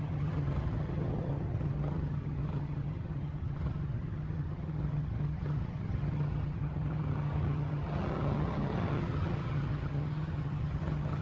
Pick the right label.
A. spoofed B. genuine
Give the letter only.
A